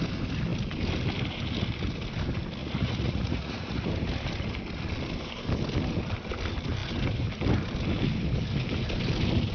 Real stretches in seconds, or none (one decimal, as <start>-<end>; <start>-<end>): 0.0-2.6; 3.9-9.5